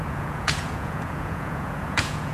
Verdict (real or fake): fake